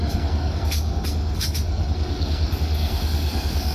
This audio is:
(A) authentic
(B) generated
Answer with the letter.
B